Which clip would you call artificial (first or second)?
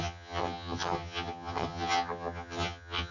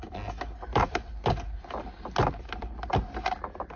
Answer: first